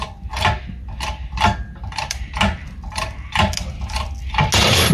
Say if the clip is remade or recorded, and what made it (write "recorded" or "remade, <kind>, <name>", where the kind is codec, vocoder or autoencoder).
recorded